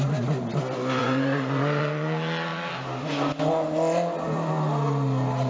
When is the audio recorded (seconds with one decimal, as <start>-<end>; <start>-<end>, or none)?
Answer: 0.0-1.0; 1.8-5.5